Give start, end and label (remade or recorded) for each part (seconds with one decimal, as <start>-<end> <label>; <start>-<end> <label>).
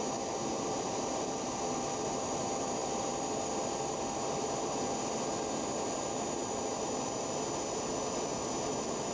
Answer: 0.0-9.1 recorded